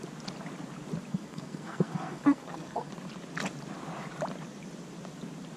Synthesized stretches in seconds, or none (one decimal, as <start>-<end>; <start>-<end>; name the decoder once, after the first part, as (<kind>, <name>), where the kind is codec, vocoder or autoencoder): 1.1-2.9 (codec, SNAC)